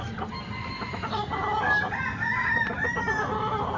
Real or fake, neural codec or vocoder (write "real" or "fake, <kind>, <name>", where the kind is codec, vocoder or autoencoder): real